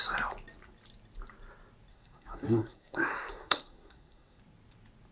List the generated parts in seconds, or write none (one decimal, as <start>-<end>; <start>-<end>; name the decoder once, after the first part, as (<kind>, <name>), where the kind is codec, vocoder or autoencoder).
1.9-4.4 (codec, SNAC)